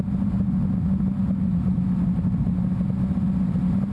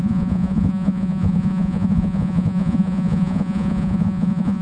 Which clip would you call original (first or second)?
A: first